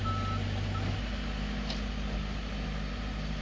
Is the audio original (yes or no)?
yes